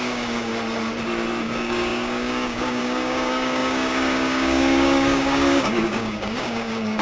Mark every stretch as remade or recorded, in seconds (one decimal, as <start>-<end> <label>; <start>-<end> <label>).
0.0-0.5 remade; 0.5-1.4 recorded; 1.4-7.0 remade